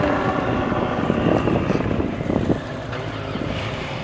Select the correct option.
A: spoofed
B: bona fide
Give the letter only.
A